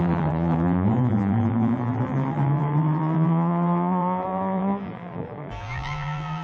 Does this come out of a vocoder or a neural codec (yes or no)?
yes